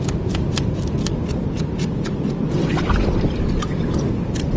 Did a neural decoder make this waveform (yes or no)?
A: no